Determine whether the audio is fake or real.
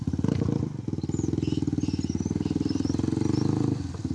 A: real